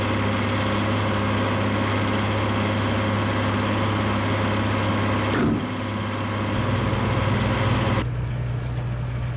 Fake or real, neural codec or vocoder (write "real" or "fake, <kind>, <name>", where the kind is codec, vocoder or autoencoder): real